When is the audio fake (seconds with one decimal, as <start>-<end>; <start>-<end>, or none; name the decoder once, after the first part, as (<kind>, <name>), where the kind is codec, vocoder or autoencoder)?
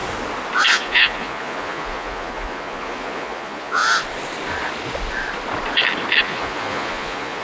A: 0.7-3.8 (vocoder, Vocos); 6.2-7.4